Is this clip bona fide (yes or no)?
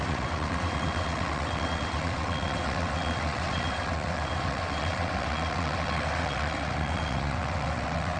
no